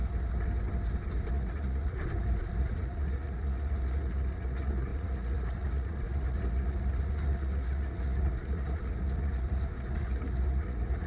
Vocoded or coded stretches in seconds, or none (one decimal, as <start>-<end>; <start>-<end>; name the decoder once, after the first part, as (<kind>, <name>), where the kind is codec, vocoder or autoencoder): 1.3-2.0 (vocoder, Vocos); 2.6-11.1